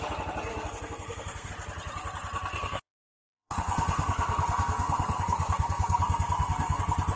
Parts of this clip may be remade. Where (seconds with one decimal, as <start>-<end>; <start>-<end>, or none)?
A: 0.5-1.5; 2.5-6.8